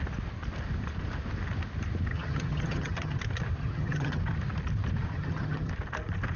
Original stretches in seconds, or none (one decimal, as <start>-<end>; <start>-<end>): 0.0-2.1; 3.2-3.6; 4.2-5.1; 5.7-6.4